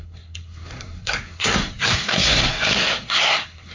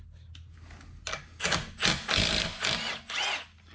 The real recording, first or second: second